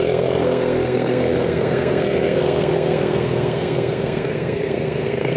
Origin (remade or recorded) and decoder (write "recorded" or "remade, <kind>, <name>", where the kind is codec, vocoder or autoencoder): remade, codec, SNAC